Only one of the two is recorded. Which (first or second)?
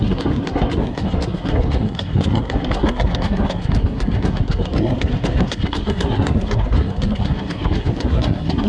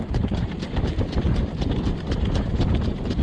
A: second